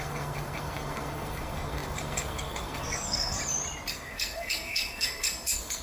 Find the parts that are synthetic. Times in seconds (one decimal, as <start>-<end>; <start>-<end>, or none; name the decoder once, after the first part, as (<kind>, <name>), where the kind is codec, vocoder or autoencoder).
0.0-3.4 (codec, SNAC); 3.9-5.8